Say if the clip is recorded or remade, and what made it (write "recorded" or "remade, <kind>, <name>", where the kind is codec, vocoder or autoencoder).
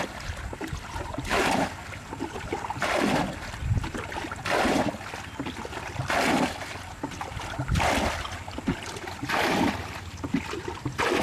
recorded